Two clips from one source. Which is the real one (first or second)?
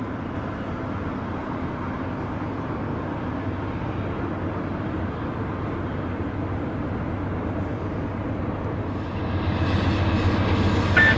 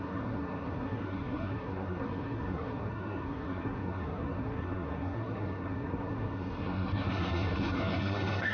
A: first